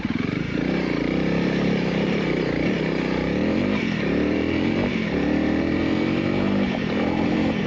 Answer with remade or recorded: remade